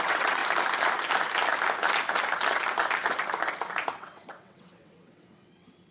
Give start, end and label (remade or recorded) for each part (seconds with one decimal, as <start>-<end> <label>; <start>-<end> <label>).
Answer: 0.0-0.4 remade; 0.4-3.9 recorded; 3.9-5.9 remade